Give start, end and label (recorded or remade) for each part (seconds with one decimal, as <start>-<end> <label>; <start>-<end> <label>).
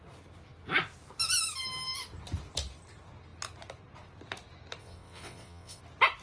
0.0-4.8 recorded; 4.8-5.8 remade; 5.8-6.2 recorded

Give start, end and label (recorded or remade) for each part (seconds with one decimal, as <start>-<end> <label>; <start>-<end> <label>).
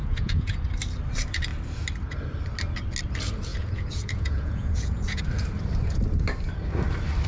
0.0-0.6 remade; 0.6-3.5 recorded; 3.5-5.2 remade; 5.2-7.3 recorded